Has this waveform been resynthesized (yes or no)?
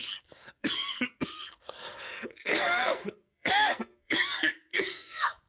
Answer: yes